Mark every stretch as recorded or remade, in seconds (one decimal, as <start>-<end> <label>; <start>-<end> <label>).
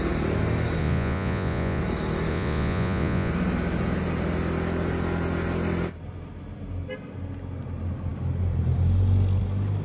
0.0-0.8 recorded; 0.8-1.8 remade; 1.8-2.3 recorded; 2.3-3.3 remade; 3.3-9.8 recorded